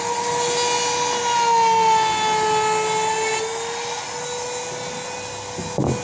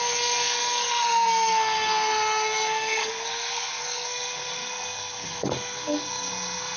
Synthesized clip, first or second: second